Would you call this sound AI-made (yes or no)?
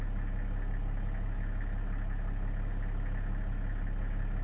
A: no